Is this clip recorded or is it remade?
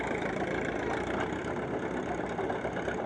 recorded